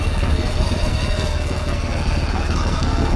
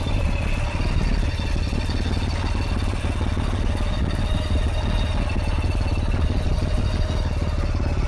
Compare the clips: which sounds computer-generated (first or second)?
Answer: first